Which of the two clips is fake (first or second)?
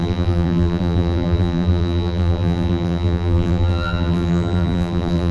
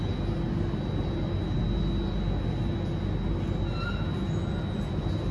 first